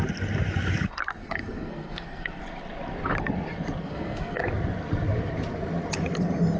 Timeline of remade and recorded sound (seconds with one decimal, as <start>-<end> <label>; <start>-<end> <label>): 0.0-1.2 recorded; 1.2-2.4 remade; 2.4-3.8 recorded; 3.8-4.4 remade; 4.4-6.6 recorded